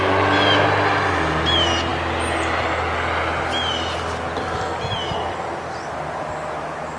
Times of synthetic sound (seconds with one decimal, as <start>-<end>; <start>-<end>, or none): none